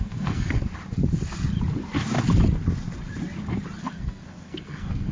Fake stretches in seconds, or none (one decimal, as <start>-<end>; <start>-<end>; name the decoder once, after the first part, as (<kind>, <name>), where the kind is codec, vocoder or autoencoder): 0.0-0.7 (codec, SNAC); 3.8-5.1